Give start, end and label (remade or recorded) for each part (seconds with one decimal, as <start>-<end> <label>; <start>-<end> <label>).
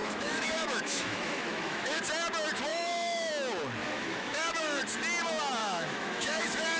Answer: 0.0-2.0 remade; 2.0-2.7 recorded; 2.7-3.3 remade; 3.3-3.8 recorded; 3.8-4.8 remade; 4.8-5.6 recorded; 5.6-6.8 remade